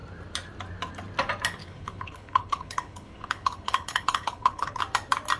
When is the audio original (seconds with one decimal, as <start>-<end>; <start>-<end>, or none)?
0.0-1.6; 4.8-5.4